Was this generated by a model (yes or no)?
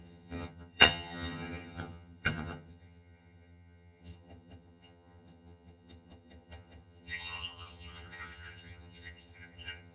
yes